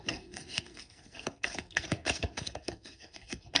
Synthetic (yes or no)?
yes